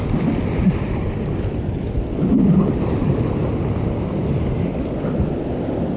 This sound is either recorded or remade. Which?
recorded